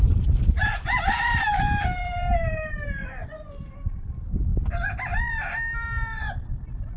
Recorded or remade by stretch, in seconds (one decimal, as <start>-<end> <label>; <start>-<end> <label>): 0.0-3.0 recorded; 3.0-3.6 remade; 3.6-7.0 recorded